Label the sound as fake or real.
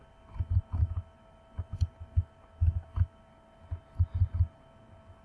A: real